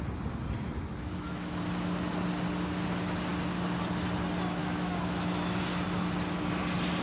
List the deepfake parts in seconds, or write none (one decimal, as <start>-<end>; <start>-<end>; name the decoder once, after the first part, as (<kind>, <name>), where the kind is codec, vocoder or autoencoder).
1.1-1.6 (autoencoder, DAC-VAE); 4.6-5.6